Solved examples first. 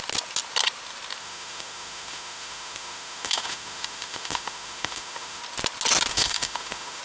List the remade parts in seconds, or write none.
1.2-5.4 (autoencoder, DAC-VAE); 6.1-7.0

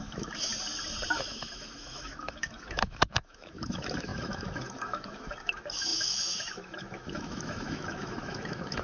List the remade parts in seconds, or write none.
0.0-0.5 (autoencoder, DAC-VAE); 1.1-8.8

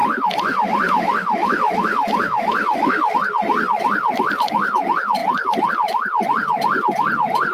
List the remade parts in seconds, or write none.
0.0-3.1 (autoencoder, DAC-VAE)

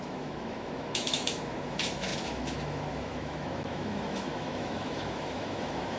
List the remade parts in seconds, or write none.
0.0-6.0 (autoencoder, DAC-VAE)

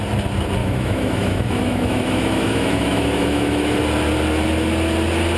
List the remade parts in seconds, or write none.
0.6-3.8 (autoencoder, DAC-VAE)